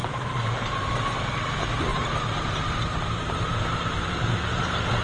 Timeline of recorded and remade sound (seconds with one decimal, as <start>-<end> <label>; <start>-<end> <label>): 0.0-0.8 remade; 0.8-1.9 recorded; 1.9-4.6 remade; 4.6-5.0 recorded